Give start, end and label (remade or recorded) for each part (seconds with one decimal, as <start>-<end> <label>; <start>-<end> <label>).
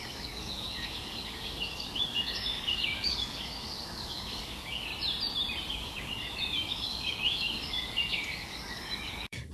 0.0-4.9 remade; 4.9-5.7 recorded; 5.7-9.5 remade